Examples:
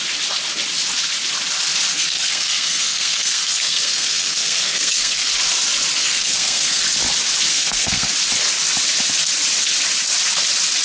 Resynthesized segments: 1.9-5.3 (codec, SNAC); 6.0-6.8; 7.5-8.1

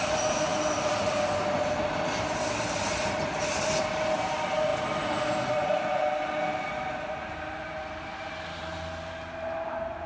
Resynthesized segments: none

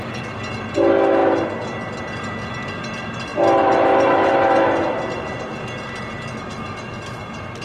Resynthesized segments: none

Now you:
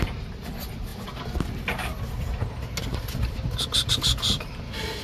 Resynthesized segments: none